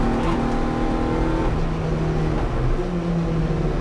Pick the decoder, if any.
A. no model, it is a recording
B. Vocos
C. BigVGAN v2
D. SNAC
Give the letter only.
A